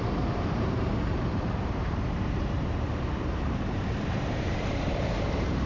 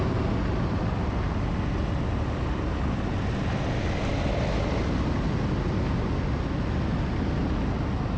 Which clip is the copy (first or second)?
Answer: first